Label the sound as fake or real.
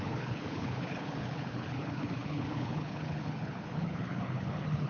fake